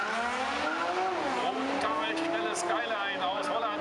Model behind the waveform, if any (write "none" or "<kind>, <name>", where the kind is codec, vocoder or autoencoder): none